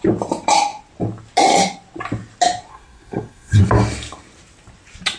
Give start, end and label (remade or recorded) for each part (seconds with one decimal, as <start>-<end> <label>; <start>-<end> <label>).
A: 0.0-2.7 recorded; 2.7-3.6 remade; 3.6-5.2 recorded